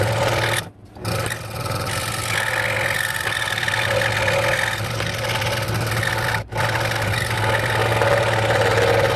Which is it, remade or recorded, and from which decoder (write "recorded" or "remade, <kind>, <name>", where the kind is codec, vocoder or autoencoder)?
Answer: recorded